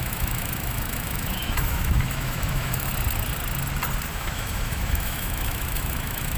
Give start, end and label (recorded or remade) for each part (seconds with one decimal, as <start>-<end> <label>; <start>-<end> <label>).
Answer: 0.0-2.9 remade; 2.9-4.1 recorded; 4.1-6.4 remade